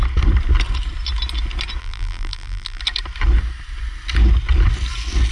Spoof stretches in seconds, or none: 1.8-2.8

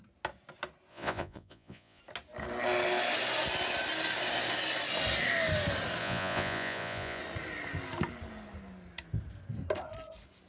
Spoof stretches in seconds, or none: 0.9-2.0; 6.0-7.2

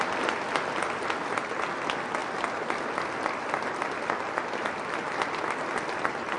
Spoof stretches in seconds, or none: none

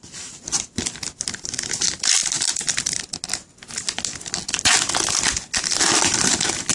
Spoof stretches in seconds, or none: none

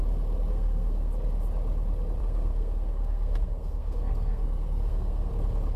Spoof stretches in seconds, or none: 0.5-1.1; 2.2-5.3